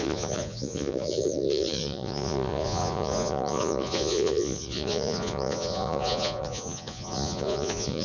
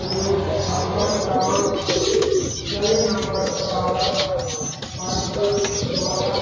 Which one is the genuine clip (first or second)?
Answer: second